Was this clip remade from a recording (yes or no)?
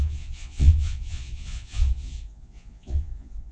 yes